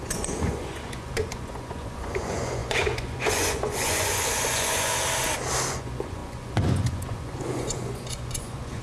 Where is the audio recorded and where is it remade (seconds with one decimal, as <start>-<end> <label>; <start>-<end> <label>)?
0.0-4.9 remade; 4.9-5.7 recorded; 5.7-8.8 remade